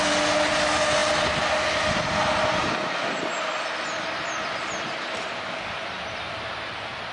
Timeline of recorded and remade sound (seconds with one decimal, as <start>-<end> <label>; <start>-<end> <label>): 0.0-7.1 recorded